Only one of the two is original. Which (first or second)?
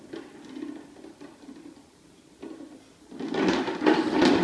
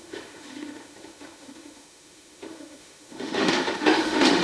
first